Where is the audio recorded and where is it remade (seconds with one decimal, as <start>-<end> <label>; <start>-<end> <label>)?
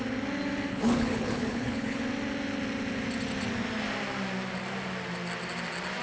0.0-0.7 recorded; 0.7-2.0 remade; 2.0-6.0 recorded